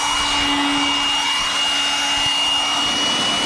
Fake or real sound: real